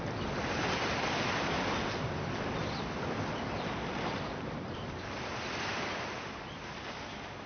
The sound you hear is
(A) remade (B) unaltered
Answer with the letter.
B